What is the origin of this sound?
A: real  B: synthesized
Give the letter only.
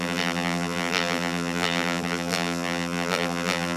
B